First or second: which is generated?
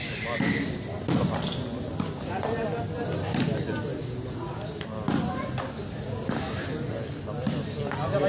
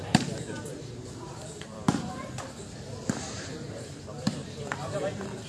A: second